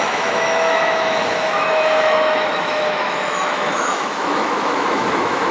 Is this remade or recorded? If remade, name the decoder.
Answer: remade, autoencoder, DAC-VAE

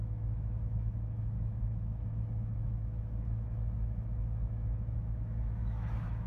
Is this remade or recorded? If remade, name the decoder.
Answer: remade, autoencoder, DAC-VAE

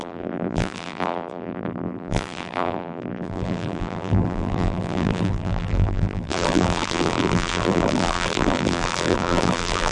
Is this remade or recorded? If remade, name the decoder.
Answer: remade, vocoder, BigVGAN v2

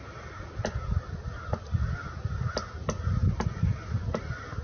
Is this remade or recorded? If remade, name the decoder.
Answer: recorded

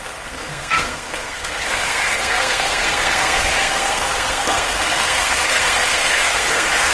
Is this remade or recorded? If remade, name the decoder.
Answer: remade, codec, SNAC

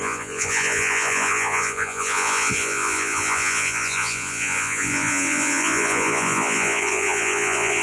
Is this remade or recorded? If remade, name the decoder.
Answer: remade, vocoder, Vocos